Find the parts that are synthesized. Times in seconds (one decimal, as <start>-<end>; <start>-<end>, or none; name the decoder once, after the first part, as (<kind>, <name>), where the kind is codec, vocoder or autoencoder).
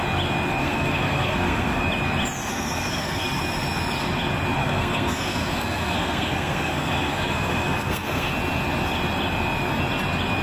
0.6-1.8 (codec, SNAC); 2.5-3.4; 4.6-8.3